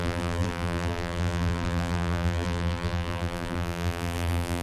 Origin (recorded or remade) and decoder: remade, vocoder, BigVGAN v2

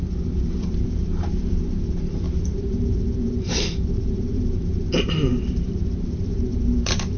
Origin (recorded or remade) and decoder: remade, vocoder, BigVGAN v2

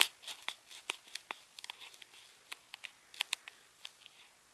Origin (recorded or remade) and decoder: recorded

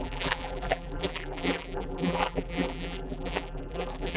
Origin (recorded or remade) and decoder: remade, vocoder, BigVGAN v2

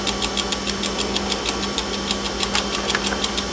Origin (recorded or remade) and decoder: recorded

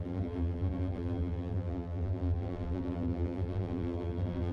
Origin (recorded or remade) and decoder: remade, vocoder, BigVGAN v2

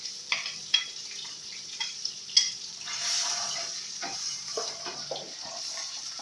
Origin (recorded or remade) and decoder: remade, vocoder, BigVGAN v2